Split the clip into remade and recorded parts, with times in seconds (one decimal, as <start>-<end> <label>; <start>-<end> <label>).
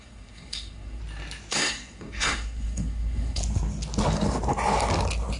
0.0-1.0 remade; 1.0-1.5 recorded; 1.5-3.4 remade; 3.4-5.4 recorded